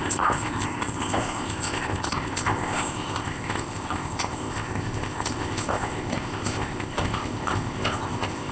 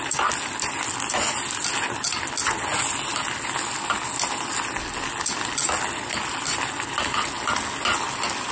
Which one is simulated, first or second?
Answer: first